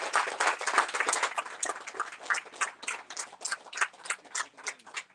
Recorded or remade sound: recorded